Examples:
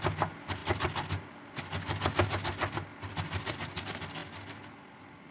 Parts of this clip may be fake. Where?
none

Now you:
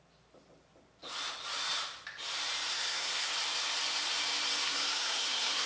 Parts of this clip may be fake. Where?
2.7-3.3; 4.6-5.7

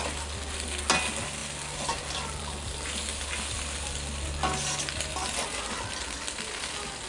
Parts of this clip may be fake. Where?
none

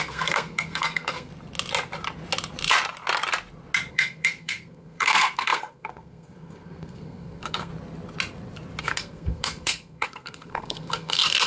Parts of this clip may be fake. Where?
0.0-1.3; 3.9-7.7; 8.8-11.5

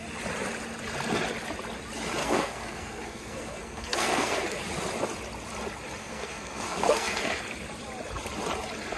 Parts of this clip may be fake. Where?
2.2-4.6; 6.0-7.4

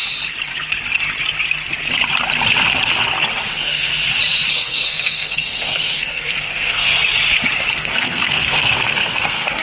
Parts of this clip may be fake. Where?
3.5-3.9; 4.5-6.9; 7.7-9.6

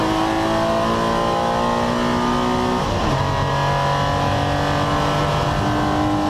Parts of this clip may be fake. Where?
none

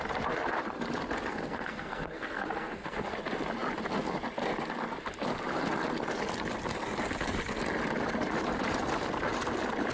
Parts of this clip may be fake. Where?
1.3-3.1